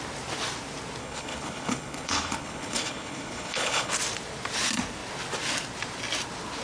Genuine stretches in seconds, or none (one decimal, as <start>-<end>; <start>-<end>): 0.0-1.0; 3.9-6.6